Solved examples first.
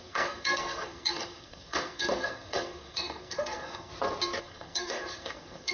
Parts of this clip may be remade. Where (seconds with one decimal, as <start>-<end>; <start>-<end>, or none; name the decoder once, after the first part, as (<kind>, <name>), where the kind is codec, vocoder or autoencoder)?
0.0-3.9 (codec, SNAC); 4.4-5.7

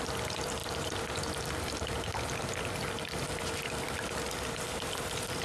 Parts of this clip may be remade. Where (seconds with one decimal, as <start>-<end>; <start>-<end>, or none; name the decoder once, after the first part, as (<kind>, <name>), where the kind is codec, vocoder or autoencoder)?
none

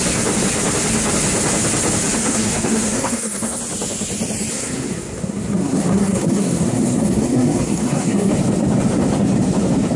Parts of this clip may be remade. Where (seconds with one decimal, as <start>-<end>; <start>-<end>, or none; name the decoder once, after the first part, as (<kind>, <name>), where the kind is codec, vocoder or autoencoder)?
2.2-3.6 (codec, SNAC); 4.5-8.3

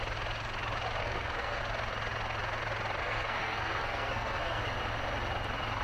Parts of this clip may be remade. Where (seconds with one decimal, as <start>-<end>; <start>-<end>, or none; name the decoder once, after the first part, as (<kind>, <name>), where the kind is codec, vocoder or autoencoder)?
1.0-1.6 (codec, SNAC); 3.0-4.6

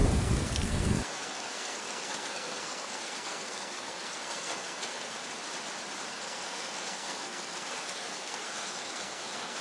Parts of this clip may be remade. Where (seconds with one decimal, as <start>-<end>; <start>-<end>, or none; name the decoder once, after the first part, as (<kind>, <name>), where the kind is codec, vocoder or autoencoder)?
0.0-5.2 (codec, SNAC); 6.1-9.6

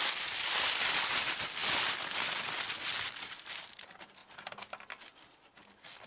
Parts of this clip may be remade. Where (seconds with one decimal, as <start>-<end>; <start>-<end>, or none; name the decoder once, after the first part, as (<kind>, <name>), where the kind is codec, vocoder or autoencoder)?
none

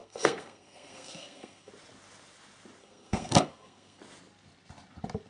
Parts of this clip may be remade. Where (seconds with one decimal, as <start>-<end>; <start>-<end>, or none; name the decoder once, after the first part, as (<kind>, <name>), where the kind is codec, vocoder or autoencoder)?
0.0-1.7 (codec, SNAC); 2.8-4.0

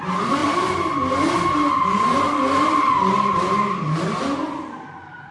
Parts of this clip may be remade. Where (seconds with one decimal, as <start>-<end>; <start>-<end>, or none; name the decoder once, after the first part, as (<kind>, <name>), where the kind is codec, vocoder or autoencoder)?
none